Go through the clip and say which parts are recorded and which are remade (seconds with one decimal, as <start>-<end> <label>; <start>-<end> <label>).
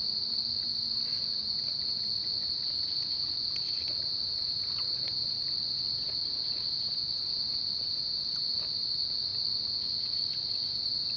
0.0-11.2 recorded